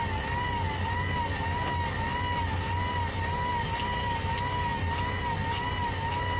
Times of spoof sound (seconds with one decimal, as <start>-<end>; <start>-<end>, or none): none